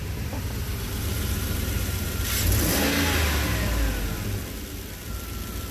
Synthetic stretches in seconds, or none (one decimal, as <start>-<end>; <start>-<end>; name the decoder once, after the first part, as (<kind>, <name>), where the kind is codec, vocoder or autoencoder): 0.0-2.2 (vocoder, BigVGAN v2)